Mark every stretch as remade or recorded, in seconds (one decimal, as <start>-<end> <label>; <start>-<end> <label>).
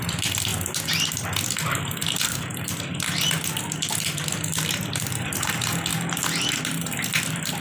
0.0-0.5 remade; 0.5-5.0 recorded; 5.0-5.9 remade; 5.9-6.6 recorded; 6.6-7.6 remade